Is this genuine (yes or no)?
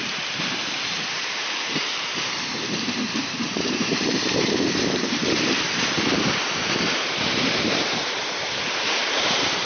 no